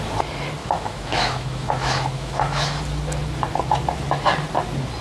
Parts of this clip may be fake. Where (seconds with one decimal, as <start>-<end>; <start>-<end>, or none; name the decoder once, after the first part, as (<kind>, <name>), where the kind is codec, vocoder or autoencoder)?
0.6-2.8 (autoencoder, DAC-VAE)